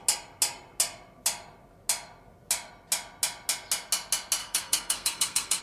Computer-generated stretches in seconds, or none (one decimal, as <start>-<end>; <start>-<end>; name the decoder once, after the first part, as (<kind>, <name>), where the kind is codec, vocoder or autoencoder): 4.4-5.6 (codec, SNAC)